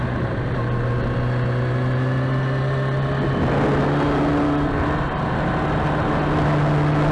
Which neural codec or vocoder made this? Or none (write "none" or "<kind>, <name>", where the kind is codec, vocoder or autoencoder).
none